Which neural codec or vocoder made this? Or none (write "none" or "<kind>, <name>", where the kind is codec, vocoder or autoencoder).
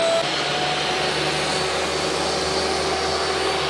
none